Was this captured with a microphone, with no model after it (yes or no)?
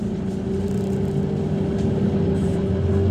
yes